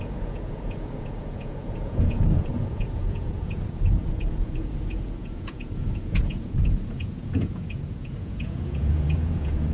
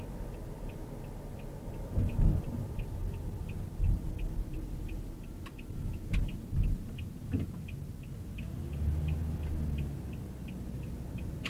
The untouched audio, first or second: second